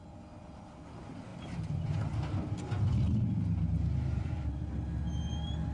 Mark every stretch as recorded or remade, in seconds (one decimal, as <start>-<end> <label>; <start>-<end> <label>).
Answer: 0.0-5.7 recorded